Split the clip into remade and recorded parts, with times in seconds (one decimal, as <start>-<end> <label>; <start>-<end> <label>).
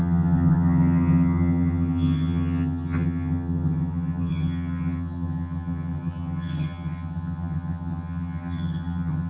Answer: 0.0-9.3 remade